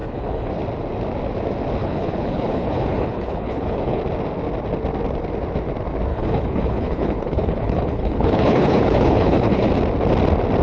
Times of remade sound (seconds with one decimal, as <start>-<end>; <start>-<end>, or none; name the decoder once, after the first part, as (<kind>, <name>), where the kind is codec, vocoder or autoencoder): 0.0-0.5 (codec, HILCodec); 1.8-4.0; 6.1-9.7